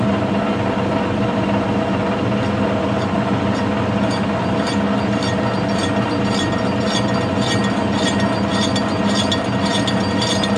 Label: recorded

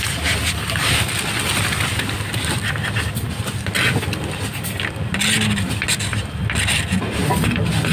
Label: recorded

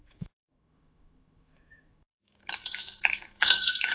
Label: remade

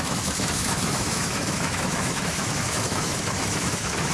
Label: remade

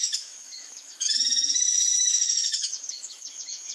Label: remade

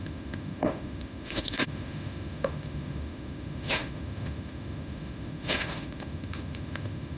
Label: remade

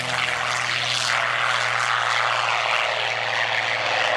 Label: recorded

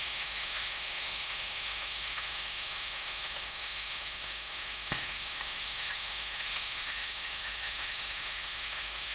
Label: remade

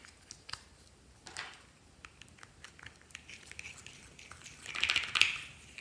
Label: recorded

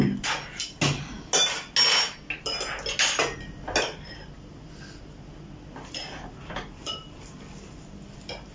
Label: recorded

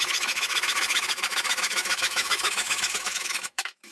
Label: remade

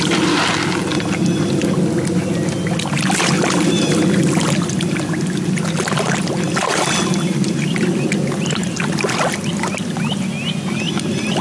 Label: recorded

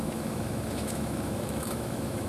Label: remade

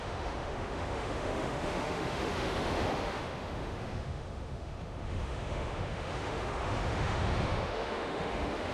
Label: remade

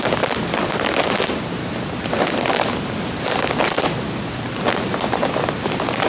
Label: recorded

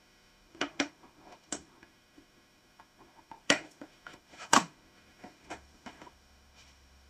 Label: remade